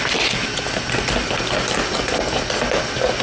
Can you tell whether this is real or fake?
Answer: real